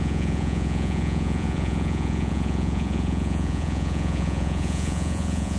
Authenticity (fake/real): fake